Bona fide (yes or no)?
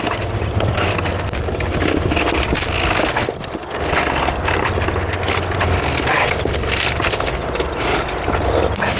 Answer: yes